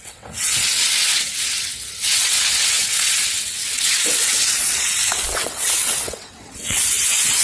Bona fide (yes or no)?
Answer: no